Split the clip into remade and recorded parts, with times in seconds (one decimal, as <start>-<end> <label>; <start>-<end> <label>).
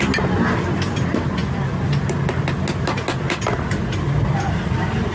0.0-5.1 recorded